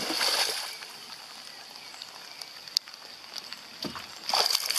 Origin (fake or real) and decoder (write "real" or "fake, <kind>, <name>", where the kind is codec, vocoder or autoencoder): real